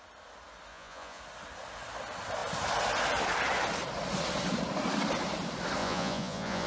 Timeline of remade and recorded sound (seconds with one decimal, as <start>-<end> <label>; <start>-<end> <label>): 0.0-0.7 recorded; 0.7-1.2 remade; 1.2-5.8 recorded; 5.8-6.7 remade